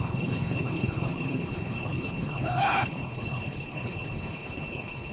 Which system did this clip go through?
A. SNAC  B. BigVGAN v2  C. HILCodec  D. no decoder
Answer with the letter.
C